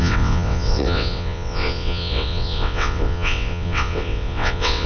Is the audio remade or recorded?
remade